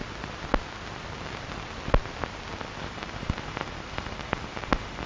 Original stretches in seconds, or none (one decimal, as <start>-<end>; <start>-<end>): 0.0-2.8